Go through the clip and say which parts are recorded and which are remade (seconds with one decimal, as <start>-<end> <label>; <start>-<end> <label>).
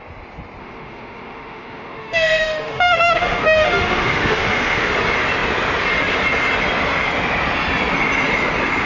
0.0-0.6 recorded; 0.6-4.9 remade; 4.9-8.8 recorded